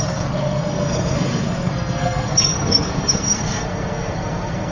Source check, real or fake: fake